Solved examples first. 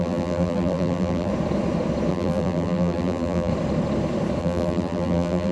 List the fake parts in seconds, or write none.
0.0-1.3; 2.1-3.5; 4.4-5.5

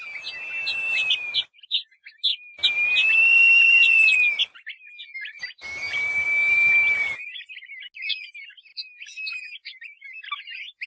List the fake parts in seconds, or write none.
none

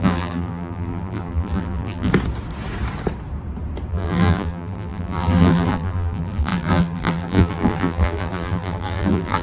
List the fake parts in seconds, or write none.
0.0-2.1; 3.9-9.4

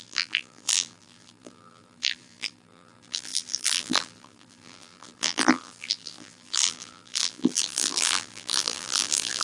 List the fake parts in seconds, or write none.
0.0-9.4

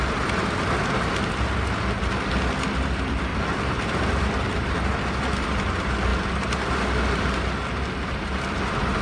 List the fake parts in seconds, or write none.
none

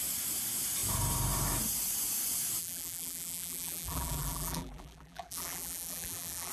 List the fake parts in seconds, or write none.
2.6-6.5

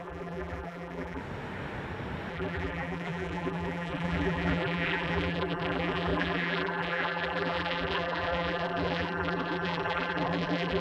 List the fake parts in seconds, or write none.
0.0-1.2; 2.3-10.8